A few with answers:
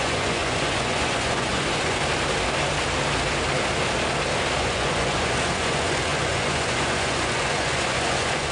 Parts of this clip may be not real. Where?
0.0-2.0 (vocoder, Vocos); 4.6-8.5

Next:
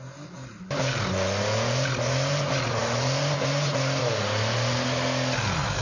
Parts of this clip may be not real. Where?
none

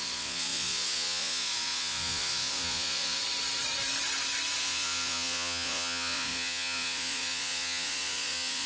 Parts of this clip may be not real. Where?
0.0-3.2 (vocoder, Vocos); 4.6-8.7